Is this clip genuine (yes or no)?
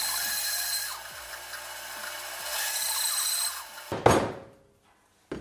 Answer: yes